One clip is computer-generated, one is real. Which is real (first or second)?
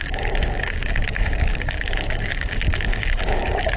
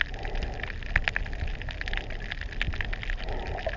second